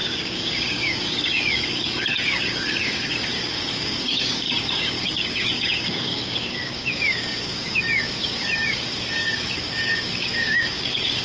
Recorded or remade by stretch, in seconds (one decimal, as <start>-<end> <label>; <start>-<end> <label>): 0.0-11.2 remade